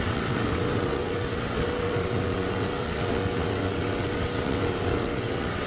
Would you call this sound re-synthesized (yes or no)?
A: yes